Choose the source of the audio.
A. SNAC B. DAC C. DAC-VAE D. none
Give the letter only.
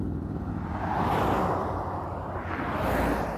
D